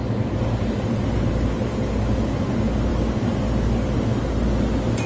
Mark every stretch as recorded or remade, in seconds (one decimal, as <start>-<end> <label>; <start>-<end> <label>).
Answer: 0.0-5.1 recorded